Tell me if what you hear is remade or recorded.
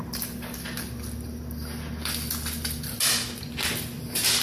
recorded